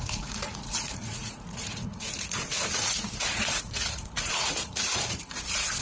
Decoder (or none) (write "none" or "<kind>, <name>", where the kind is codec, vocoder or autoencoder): vocoder, Vocos